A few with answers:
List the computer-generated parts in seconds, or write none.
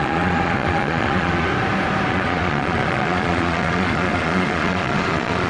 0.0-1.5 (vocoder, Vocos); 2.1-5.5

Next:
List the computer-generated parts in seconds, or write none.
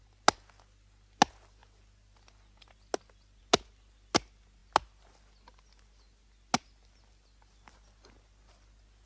none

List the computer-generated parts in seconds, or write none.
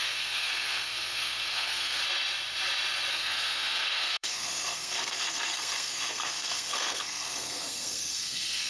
0.0-2.0 (codec, SNAC); 3.1-8.7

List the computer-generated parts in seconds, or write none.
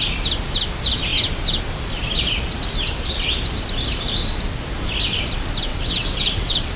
5.7-6.8 (vocoder, WaveNeXt)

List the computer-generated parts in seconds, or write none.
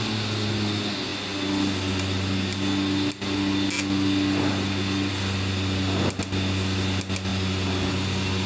none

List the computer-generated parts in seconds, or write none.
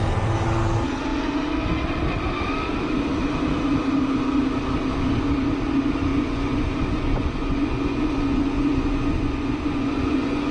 6.1-10.5 (vocoder, Vocos)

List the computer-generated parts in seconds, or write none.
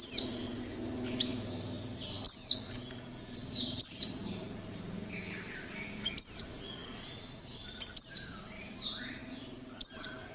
none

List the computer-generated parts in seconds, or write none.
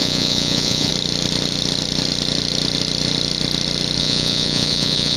0.0-0.9 (vocoder, Vocos); 4.0-5.2